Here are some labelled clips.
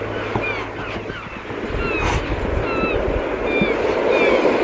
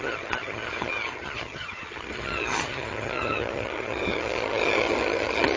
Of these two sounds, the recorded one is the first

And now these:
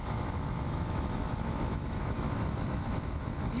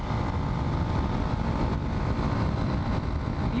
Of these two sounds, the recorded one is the second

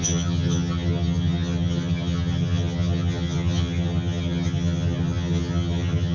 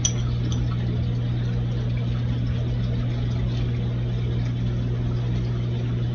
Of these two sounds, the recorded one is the second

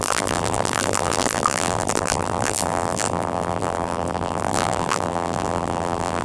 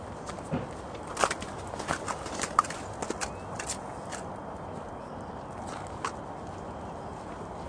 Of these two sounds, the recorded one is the second